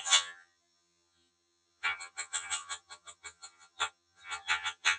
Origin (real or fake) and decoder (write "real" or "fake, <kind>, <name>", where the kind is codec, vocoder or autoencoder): fake, vocoder, HiFi-GAN